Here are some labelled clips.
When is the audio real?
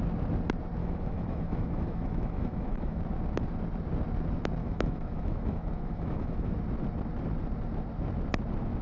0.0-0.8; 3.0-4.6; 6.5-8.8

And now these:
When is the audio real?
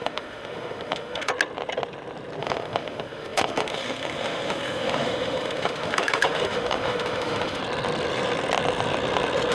1.3-2.4; 7.6-9.5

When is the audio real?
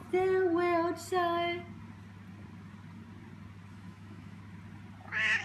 0.0-3.7; 4.4-5.4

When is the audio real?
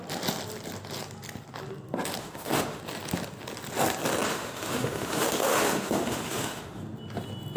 0.0-2.2; 2.8-4.3; 6.8-7.6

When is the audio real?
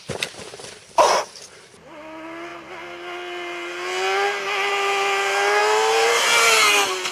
0.0-7.1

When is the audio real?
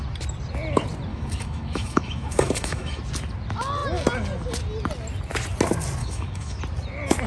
0.0-1.1; 3.0-6.0; 6.6-7.3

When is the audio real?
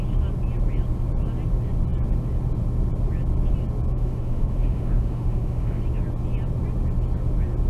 0.0-3.9; 5.8-7.7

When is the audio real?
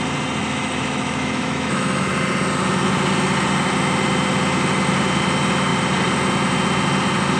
0.0-0.4; 2.1-7.4